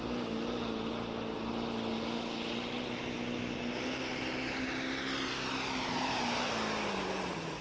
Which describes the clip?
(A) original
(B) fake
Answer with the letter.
A